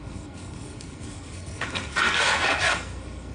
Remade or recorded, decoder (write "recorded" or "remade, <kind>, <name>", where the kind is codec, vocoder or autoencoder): remade, codec, SNAC